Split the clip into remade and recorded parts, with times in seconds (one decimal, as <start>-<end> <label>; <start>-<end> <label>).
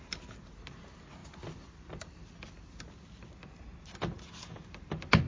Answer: 0.0-5.3 recorded